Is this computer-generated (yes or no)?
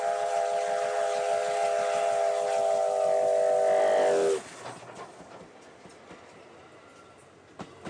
no